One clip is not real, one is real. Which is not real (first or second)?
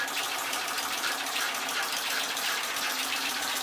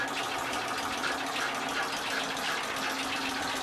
first